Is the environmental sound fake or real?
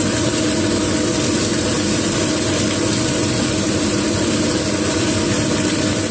real